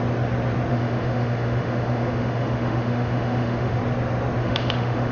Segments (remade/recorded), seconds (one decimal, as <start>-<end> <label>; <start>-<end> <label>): 0.0-0.7 recorded; 0.7-3.8 remade; 3.8-4.4 recorded; 4.4-5.1 remade